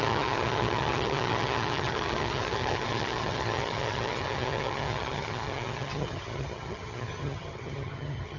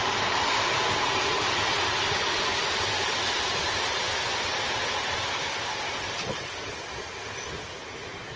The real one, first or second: second